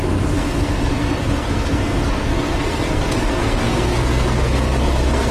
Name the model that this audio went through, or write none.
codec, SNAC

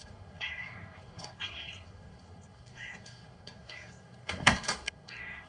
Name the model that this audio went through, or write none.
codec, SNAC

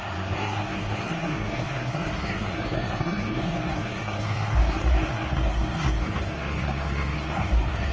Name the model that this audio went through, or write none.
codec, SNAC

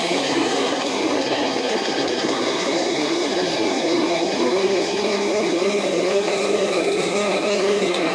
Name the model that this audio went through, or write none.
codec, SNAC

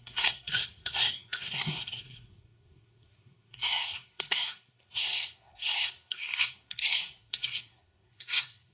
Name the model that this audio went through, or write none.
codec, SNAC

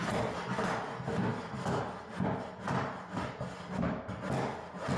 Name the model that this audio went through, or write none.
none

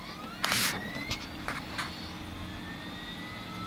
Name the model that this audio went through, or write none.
none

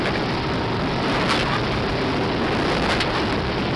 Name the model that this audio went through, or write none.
none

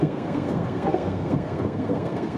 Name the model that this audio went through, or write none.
codec, SNAC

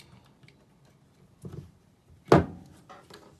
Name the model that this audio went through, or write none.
none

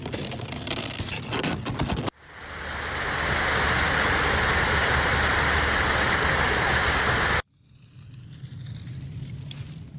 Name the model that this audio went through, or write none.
none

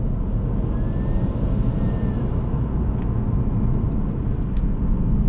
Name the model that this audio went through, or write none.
none